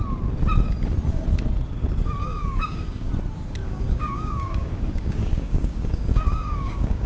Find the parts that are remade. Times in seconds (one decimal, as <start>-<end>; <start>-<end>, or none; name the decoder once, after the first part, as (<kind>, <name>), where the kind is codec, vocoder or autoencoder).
2.2-3.1 (codec, DAC); 3.6-7.1